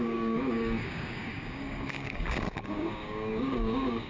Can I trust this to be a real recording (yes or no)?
no